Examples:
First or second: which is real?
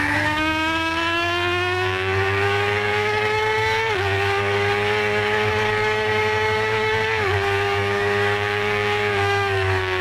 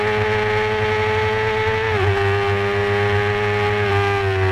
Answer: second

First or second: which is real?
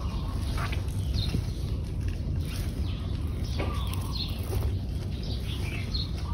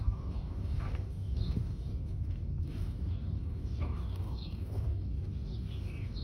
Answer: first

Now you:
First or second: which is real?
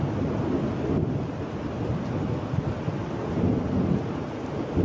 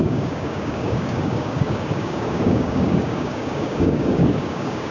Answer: first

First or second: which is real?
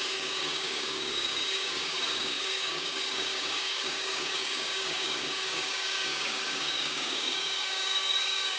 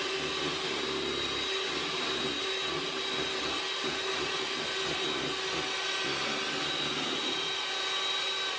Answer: second